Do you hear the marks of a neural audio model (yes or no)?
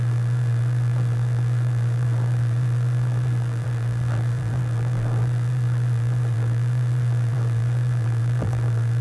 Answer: yes